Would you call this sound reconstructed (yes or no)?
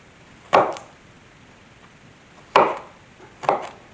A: no